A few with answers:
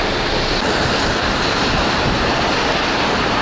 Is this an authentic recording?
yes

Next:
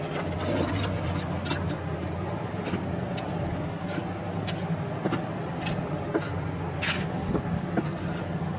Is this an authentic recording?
yes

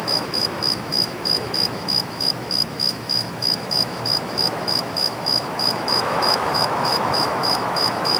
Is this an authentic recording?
no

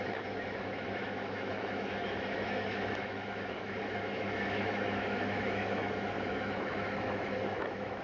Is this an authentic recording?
no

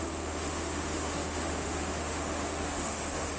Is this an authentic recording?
no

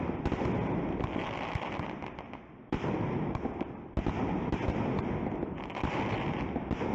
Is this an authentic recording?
yes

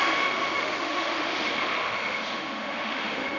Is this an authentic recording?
no